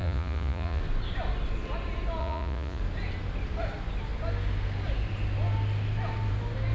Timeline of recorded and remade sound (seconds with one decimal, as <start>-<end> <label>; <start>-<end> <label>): 0.0-0.8 remade; 0.8-2.2 recorded; 2.2-2.8 remade; 2.8-6.7 recorded